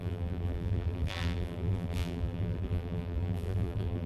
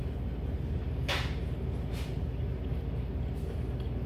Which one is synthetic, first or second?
first